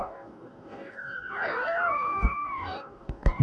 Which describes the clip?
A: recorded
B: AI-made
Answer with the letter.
B